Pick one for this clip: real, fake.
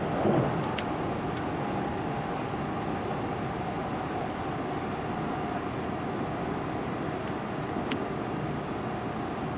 real